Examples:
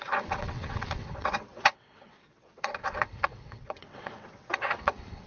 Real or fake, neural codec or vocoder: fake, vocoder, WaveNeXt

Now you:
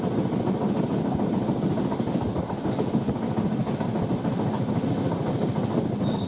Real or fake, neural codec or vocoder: real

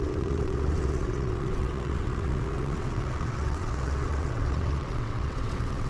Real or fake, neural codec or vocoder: fake, vocoder, WaveNeXt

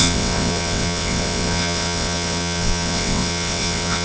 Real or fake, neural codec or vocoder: fake, vocoder, WaveNeXt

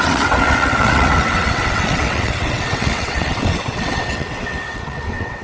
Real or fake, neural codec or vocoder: fake, vocoder, WaveNeXt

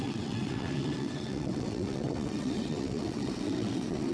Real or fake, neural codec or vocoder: fake, vocoder, WaveNeXt